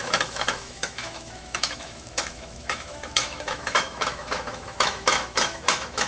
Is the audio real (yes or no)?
no